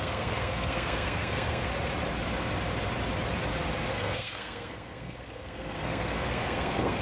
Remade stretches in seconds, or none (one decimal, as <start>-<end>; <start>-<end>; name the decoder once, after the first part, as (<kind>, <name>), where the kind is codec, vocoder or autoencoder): 0.0-1.7 (codec, SNAC); 3.9-7.0